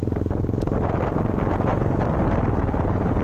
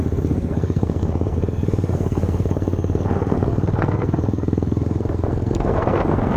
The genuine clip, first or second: first